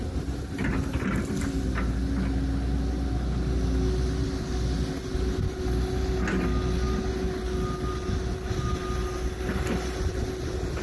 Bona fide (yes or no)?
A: yes